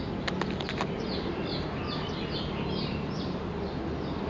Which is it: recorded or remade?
recorded